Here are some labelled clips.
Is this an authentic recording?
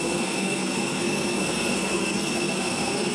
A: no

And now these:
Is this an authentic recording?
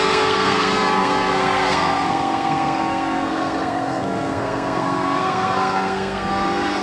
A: no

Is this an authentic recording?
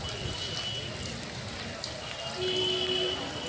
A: yes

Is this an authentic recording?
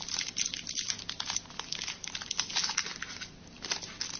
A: yes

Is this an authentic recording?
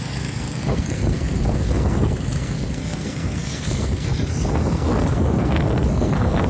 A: no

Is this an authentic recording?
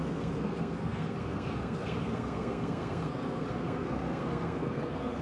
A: no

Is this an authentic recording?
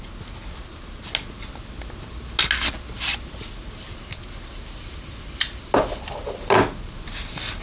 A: yes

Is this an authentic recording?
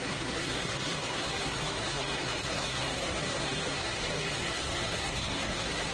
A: no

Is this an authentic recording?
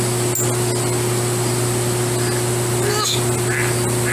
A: yes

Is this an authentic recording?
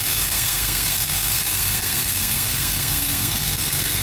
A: no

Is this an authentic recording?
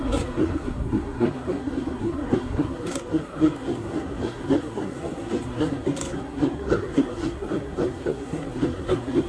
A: no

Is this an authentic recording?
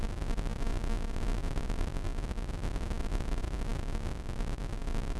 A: yes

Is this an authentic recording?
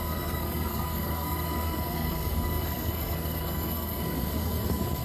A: no